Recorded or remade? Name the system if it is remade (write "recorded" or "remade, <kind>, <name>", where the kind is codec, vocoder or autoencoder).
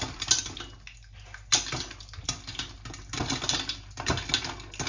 recorded